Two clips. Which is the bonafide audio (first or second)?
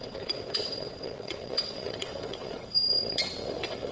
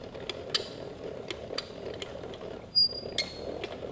second